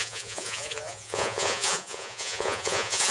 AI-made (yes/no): yes